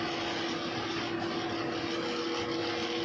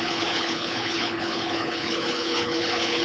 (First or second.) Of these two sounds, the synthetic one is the second